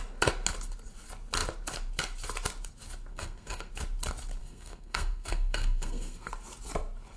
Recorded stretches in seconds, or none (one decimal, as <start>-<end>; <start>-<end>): 0.0-3.1; 3.7-4.4; 6.3-7.2